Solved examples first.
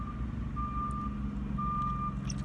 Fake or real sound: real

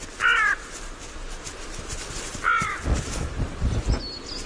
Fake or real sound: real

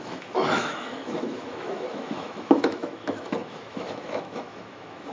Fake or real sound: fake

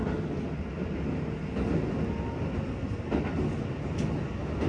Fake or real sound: real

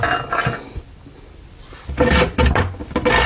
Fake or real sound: real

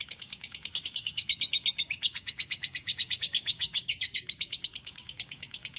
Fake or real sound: fake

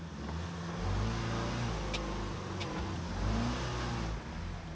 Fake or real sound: real